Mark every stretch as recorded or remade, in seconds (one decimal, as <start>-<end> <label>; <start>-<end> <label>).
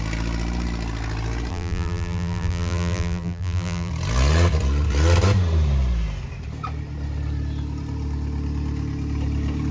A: 0.0-1.5 recorded; 1.5-3.9 remade; 3.9-9.7 recorded